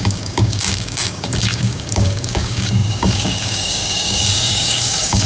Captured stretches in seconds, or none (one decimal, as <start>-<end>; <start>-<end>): none